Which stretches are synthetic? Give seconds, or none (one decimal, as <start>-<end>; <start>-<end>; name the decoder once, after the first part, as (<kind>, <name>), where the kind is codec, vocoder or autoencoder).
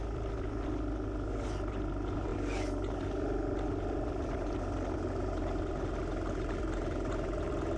none